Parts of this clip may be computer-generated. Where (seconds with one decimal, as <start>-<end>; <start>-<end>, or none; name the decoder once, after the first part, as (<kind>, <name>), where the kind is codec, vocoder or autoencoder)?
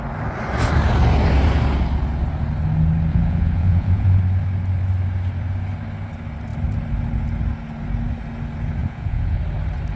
3.1-4.2 (vocoder, Vocos); 8.8-9.4